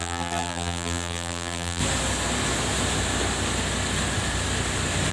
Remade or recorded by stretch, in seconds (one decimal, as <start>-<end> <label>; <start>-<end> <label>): 0.0-1.8 remade; 1.8-5.1 recorded